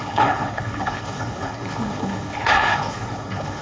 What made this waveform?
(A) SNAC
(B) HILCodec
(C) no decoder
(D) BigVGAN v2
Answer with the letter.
B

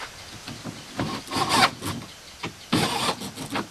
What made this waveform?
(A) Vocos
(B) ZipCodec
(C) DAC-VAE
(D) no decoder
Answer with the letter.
D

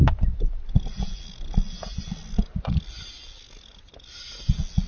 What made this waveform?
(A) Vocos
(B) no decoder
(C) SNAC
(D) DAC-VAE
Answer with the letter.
B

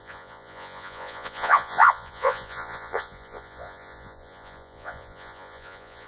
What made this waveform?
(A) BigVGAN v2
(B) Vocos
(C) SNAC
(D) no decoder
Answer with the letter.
B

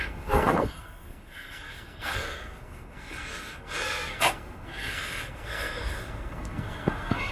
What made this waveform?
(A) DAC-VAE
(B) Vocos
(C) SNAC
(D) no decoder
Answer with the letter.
C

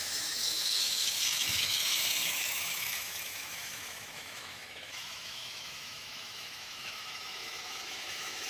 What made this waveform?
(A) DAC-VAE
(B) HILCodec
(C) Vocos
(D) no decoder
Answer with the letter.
A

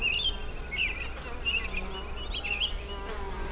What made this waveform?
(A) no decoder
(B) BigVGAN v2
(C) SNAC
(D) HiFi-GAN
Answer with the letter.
A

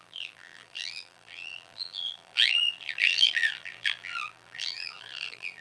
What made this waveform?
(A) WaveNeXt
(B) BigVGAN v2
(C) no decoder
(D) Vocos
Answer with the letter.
B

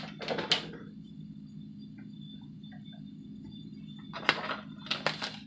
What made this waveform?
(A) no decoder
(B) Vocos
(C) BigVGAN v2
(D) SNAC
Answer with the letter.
A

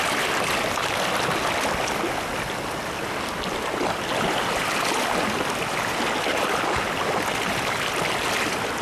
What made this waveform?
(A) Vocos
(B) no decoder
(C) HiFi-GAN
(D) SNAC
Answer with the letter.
B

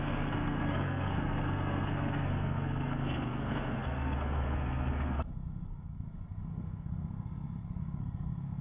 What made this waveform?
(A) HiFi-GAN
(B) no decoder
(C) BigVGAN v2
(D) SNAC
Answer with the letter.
D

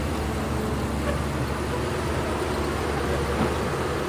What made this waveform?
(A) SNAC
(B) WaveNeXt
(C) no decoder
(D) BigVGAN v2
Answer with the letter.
C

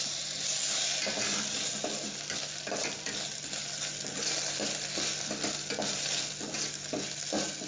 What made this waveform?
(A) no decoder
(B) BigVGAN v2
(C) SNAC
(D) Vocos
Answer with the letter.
A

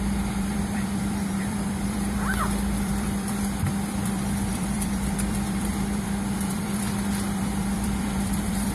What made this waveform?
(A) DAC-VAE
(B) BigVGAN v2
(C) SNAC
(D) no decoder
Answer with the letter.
B